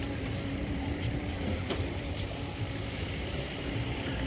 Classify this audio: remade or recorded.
remade